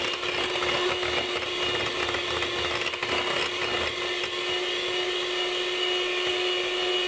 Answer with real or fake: real